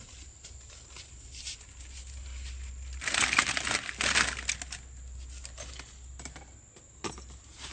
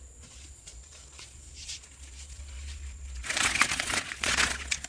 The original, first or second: first